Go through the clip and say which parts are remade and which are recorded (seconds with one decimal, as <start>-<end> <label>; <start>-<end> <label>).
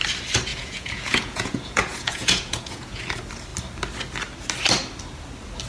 0.0-0.5 recorded; 0.5-3.0 remade; 3.0-5.7 recorded